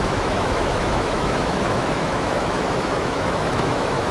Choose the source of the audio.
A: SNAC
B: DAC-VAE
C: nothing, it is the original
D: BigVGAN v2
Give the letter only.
B